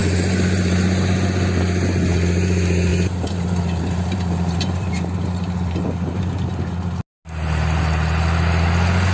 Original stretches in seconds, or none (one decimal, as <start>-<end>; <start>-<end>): 1.1-2.9; 6.2-9.1